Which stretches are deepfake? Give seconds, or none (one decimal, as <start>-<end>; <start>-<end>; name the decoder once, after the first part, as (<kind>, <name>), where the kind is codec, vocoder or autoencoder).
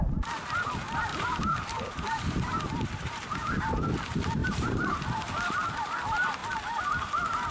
1.1-3.7 (vocoder, BigVGAN v2); 4.4-5.0